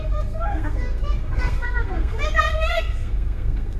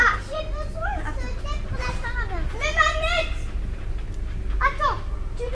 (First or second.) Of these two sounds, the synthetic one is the first